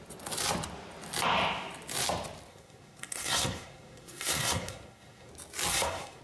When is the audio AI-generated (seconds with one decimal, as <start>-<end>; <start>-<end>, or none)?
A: 2.5-5.3; 5.7-6.2